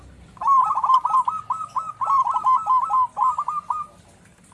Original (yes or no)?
yes